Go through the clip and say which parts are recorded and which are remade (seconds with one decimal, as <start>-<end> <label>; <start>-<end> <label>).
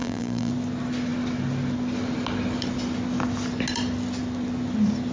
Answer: 0.0-0.5 remade; 0.5-5.1 recorded